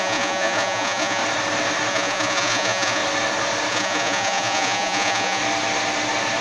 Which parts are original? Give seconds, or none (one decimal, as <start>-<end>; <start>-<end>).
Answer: 1.2-1.9; 3.0-3.7; 5.4-6.4